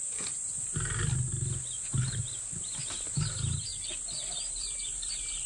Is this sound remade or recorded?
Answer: recorded